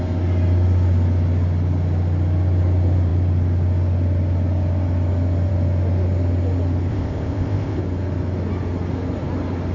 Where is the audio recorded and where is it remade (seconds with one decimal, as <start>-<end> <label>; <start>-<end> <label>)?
0.0-6.9 recorded; 6.9-7.8 remade; 7.8-9.7 recorded